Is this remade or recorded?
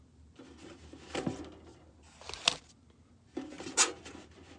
recorded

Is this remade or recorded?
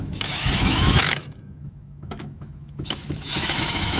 remade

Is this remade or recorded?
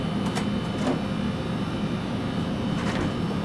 recorded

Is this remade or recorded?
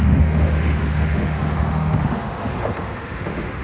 remade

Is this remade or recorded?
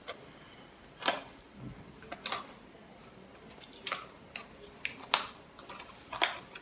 recorded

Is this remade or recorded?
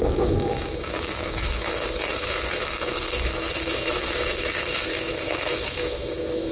remade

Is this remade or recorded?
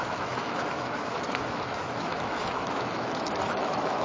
remade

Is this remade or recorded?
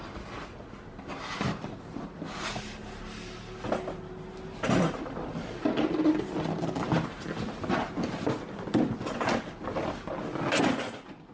recorded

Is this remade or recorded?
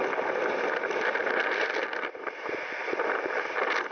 recorded